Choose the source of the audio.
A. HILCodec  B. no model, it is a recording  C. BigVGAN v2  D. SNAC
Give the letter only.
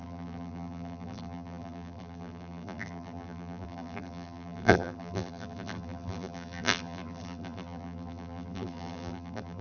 C